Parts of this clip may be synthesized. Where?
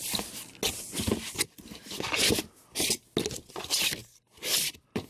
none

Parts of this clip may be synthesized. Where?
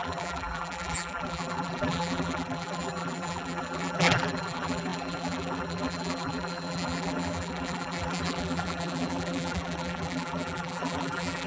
0.0-11.5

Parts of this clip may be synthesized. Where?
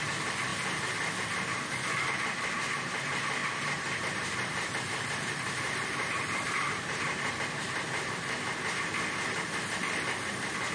3.4-7.3